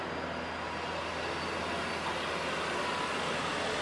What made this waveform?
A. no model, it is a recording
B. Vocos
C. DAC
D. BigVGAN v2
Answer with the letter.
A